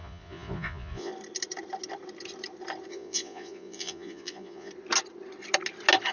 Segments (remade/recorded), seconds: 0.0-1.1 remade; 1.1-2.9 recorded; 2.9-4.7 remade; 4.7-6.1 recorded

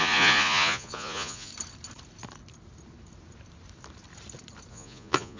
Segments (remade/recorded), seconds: 0.0-1.5 remade; 1.5-4.7 recorded; 4.7-5.4 remade